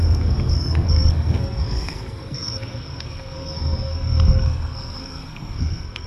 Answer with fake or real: fake